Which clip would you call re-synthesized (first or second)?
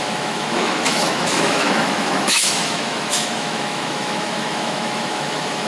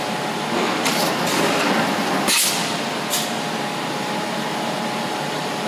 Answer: first